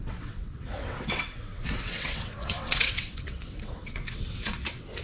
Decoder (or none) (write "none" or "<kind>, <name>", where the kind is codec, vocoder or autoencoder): vocoder, WaveNeXt